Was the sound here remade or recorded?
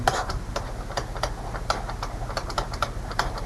recorded